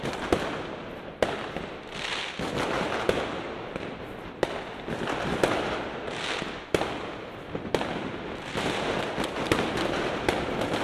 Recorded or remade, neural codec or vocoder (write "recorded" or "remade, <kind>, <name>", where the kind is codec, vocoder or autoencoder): recorded